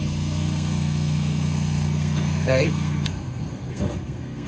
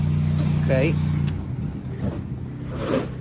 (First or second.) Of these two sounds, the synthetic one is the first